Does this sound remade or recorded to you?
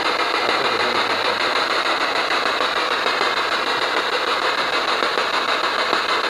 recorded